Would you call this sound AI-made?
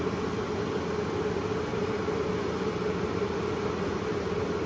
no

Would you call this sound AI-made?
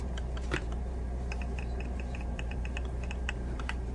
yes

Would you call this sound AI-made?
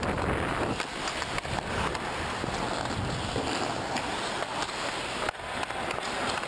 no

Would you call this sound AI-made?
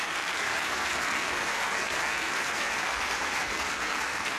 yes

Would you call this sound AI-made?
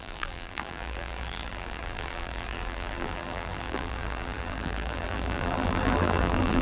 yes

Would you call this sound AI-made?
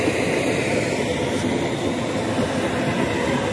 no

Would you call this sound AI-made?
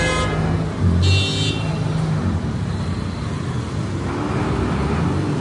no